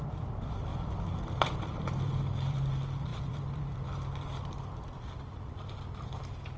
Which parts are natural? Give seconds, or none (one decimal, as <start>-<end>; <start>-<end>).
0.7-1.5